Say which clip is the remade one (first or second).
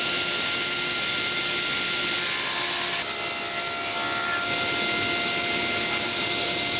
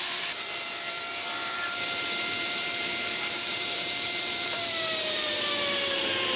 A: second